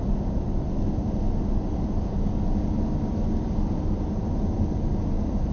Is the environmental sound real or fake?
real